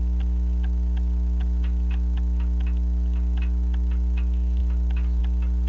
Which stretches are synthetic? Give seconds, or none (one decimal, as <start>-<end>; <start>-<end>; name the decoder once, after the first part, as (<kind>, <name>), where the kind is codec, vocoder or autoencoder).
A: none